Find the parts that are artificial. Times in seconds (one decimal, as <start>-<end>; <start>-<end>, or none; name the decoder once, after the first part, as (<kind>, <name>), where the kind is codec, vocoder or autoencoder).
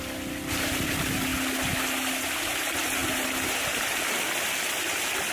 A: none